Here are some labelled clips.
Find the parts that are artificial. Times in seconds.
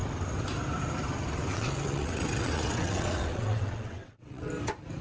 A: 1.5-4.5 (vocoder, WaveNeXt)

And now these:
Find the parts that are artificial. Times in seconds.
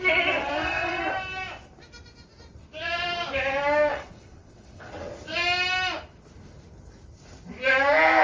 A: 0.4-1.0 (vocoder, WaveNeXt); 3.9-4.9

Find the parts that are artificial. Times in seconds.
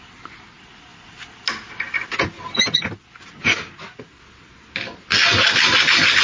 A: none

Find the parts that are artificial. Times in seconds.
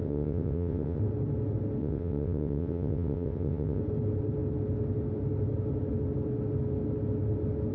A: 0.0-1.0 (vocoder, WaveNeXt); 1.8-3.8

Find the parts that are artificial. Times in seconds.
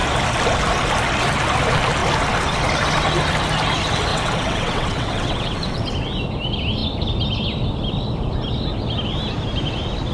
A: 4.1-5.8 (vocoder, WaveNeXt)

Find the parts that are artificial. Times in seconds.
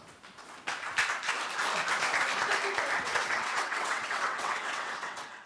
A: 3.0-5.5 (vocoder, WaveNeXt)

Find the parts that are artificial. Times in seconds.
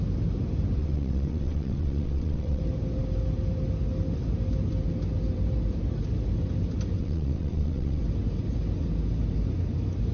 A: 0.8-2.6 (vocoder, WaveNeXt); 7.0-8.0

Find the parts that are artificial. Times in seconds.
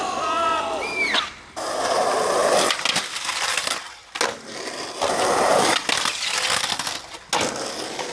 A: none